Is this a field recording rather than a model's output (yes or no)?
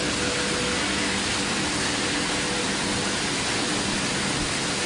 yes